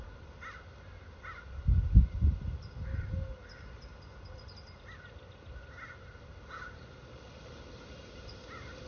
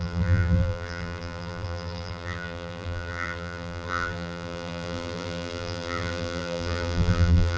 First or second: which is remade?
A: second